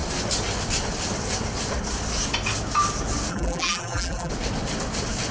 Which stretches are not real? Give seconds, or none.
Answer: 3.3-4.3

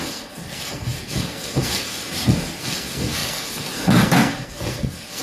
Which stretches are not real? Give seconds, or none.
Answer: 0.0-5.2

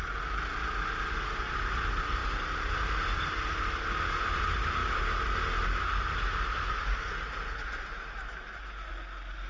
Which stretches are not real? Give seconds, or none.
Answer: none

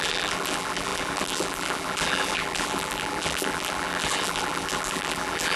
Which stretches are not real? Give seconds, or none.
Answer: 0.0-5.6

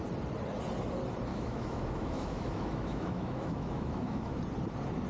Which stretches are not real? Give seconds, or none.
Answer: 1.3-4.4